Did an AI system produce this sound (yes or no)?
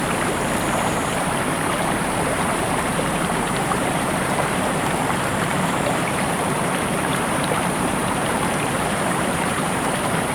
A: yes